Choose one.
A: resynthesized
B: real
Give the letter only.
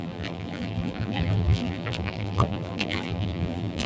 A